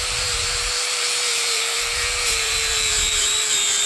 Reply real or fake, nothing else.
fake